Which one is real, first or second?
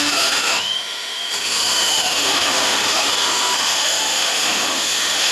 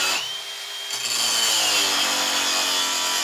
second